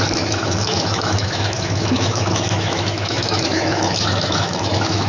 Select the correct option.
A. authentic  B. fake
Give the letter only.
B